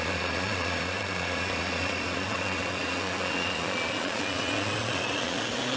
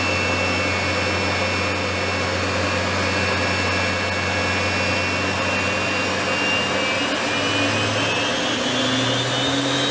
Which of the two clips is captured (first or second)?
second